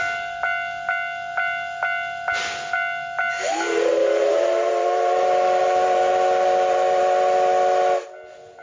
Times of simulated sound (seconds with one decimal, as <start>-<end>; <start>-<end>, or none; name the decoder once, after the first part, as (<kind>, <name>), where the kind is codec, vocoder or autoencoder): 3.9-7.0 (vocoder, BigVGAN v2)